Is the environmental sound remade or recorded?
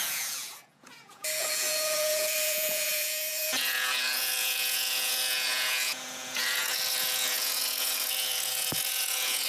remade